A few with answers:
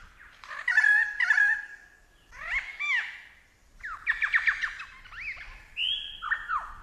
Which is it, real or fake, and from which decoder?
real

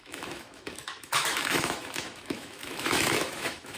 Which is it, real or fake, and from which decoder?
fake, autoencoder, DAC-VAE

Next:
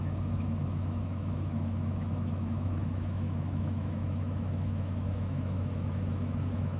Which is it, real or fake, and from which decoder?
fake, autoencoder, DAC-VAE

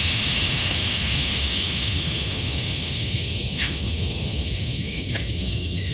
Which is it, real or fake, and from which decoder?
fake, autoencoder, DAC-VAE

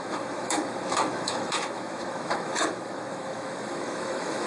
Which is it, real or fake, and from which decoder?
fake, autoencoder, DAC-VAE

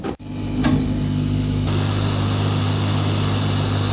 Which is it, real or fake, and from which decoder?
real